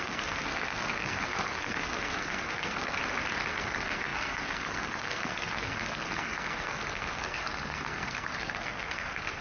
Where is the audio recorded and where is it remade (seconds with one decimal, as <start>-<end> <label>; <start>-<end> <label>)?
0.0-3.0 remade; 3.0-3.5 recorded; 3.5-9.4 remade